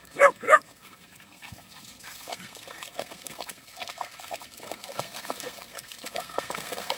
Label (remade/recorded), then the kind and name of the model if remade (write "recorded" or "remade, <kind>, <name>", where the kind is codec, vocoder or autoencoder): remade, codec, SNAC